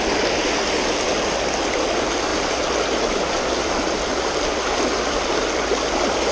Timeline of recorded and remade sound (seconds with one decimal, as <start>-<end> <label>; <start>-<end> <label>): 0.0-6.3 recorded